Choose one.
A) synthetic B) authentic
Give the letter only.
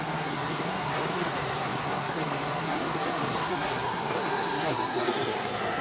A